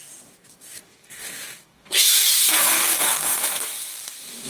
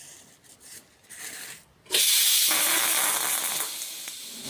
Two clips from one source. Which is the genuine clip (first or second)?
second